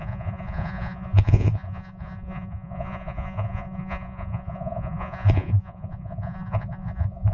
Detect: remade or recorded remade